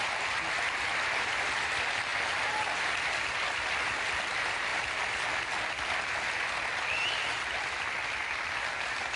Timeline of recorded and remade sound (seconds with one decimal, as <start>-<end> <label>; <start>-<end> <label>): 0.0-2.1 remade; 2.1-2.8 recorded; 2.8-4.7 remade; 4.7-6.0 recorded; 6.0-9.2 remade